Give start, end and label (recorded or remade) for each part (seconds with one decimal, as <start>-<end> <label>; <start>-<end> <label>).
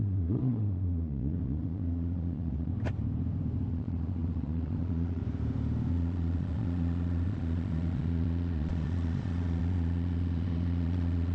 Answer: 0.0-2.7 remade; 2.7-3.7 recorded; 3.7-5.2 remade; 5.2-5.9 recorded; 5.9-11.3 remade